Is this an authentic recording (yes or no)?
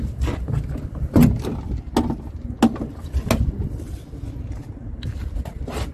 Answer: yes